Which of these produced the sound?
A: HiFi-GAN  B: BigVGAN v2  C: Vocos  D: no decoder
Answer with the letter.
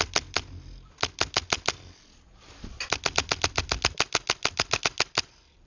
D